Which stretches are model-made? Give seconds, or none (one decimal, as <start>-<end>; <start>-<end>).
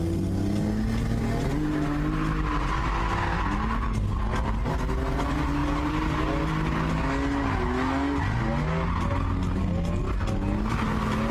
5.6-6.2